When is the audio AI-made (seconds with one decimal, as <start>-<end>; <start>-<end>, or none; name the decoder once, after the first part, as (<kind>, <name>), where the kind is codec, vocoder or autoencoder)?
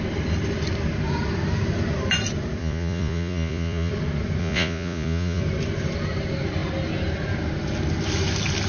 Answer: 2.6-3.9 (vocoder, Vocos); 4.4-5.4